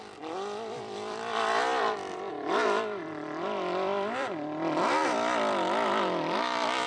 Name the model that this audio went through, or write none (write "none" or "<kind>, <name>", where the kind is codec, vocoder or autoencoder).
vocoder, BigVGAN v2